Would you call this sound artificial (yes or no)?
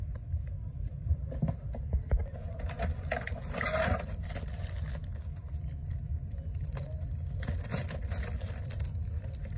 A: no